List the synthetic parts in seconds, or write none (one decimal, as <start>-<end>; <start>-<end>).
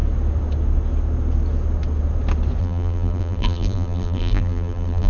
2.6-5.1